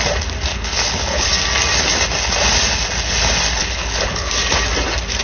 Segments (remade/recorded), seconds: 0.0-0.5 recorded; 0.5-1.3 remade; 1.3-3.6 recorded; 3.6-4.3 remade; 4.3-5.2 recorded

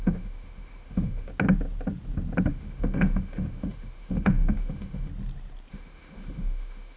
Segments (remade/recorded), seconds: 0.0-1.3 remade; 1.3-2.5 recorded; 2.5-5.1 remade; 5.1-5.7 recorded; 5.7-7.0 remade

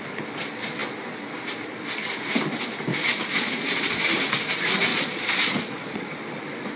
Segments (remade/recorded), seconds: 0.0-2.9 recorded; 2.9-3.9 remade; 3.9-4.9 recorded; 4.9-6.3 remade; 6.3-6.8 recorded

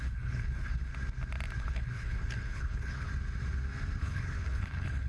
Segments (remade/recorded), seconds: 0.0-0.9 remade; 0.9-1.6 recorded; 1.6-3.1 remade; 3.1-4.0 recorded; 4.0-5.1 remade

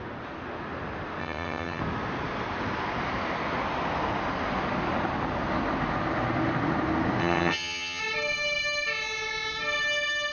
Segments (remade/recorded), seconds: 0.0-1.2 recorded; 1.2-1.8 remade; 1.8-7.2 recorded; 7.2-8.0 remade; 8.0-10.3 recorded